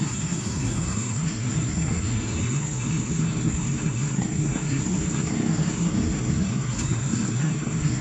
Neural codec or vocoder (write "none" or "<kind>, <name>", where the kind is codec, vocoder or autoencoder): codec, SNAC